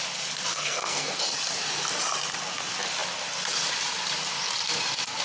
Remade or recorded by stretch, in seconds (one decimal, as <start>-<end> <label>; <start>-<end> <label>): 0.0-0.5 recorded; 0.5-1.2 remade; 1.2-5.2 recorded